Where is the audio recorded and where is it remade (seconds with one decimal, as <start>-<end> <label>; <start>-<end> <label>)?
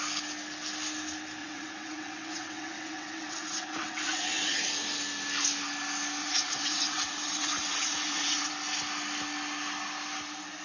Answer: 0.0-1.4 recorded; 1.4-4.6 remade; 4.6-6.2 recorded; 6.2-8.5 remade; 8.5-10.6 recorded